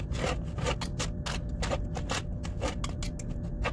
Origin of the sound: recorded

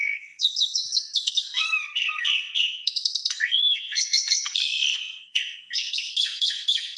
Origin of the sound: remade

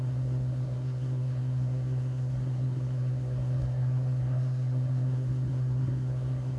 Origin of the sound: remade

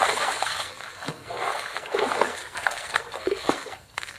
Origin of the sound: remade